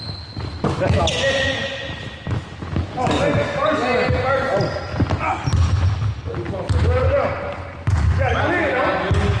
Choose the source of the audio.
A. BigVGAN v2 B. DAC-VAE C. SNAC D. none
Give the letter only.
D